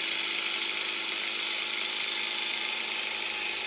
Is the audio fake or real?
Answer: real